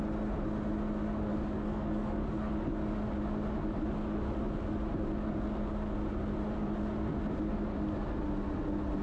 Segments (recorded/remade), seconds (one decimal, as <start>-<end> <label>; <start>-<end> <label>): 0.0-1.3 recorded; 1.3-2.5 remade; 2.5-9.0 recorded